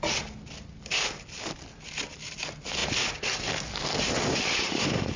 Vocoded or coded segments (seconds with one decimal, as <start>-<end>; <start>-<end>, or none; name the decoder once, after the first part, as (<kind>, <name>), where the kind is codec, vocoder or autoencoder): none